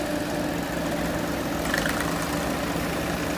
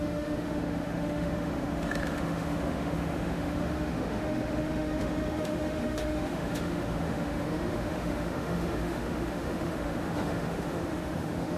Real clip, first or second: first